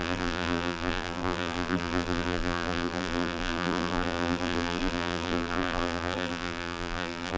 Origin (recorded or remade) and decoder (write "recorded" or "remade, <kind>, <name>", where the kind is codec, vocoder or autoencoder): remade, vocoder, BigVGAN v2